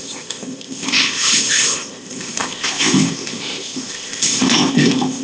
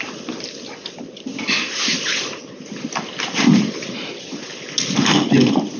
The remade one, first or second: first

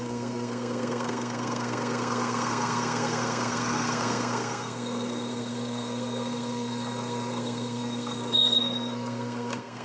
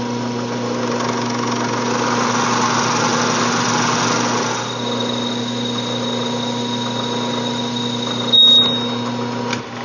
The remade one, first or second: first